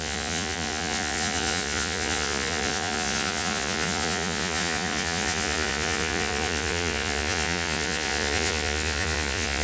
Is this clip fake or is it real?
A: fake